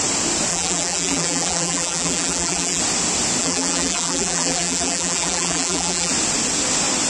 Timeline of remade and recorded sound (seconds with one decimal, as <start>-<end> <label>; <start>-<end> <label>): 0.0-0.5 recorded; 0.5-2.8 remade; 2.8-3.4 recorded; 3.4-6.1 remade; 6.1-7.1 recorded